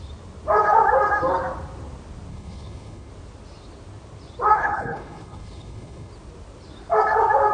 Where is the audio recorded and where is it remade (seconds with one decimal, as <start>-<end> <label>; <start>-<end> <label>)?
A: 0.0-2.3 recorded; 2.3-3.1 remade; 3.1-4.6 recorded; 4.6-6.1 remade; 6.1-7.5 recorded